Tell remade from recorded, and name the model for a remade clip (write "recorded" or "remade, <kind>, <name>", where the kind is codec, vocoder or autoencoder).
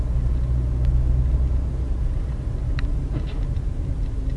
recorded